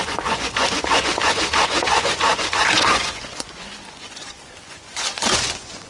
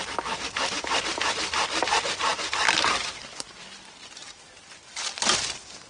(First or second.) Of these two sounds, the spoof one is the first